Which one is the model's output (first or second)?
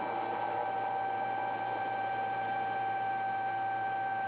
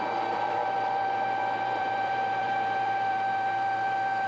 second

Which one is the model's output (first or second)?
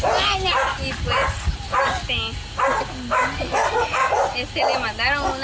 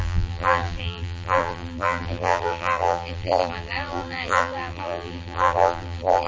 second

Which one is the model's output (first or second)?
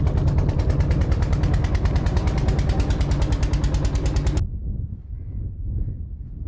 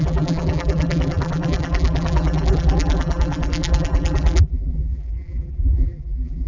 second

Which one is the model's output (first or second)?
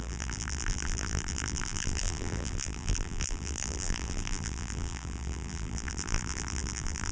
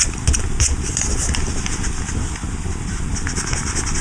first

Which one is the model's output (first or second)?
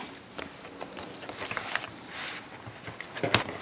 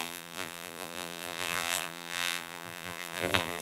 second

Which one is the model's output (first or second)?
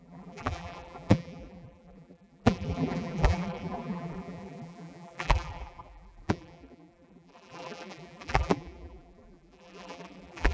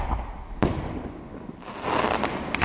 first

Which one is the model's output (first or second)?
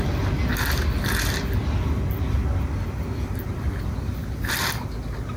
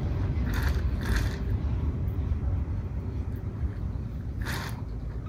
second